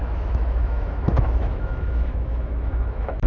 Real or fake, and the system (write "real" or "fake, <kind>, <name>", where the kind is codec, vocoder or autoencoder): fake, autoencoder, DAC-VAE